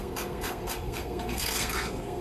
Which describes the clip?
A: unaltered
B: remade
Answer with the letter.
B